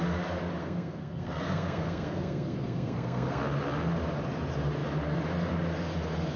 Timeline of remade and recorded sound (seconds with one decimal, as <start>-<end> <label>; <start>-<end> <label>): 0.0-0.6 recorded; 0.6-3.4 remade; 3.4-6.4 recorded